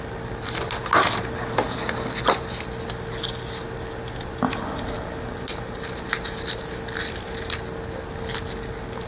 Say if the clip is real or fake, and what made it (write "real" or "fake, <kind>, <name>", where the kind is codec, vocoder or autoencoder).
real